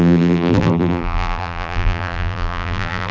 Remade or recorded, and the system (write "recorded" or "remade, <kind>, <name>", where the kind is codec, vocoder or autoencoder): remade, vocoder, BigVGAN v2